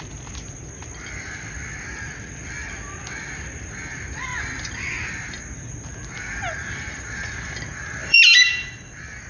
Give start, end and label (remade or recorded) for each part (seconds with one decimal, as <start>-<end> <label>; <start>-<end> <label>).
0.0-4.3 recorded; 4.3-4.9 remade; 4.9-8.0 recorded; 8.0-8.5 remade; 8.5-9.3 recorded